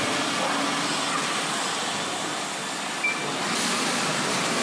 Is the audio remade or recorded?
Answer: recorded